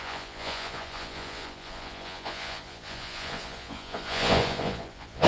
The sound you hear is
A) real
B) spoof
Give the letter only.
B